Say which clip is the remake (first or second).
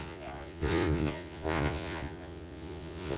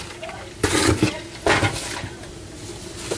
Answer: first